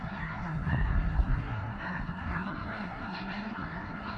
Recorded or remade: remade